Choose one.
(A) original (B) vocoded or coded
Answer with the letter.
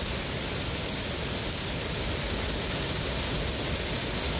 A